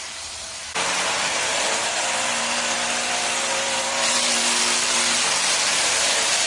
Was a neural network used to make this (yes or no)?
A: yes